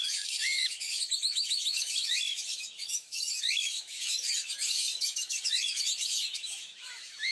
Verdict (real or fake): fake